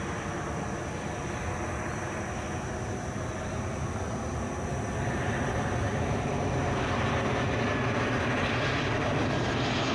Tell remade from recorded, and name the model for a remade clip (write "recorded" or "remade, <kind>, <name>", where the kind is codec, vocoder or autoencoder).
recorded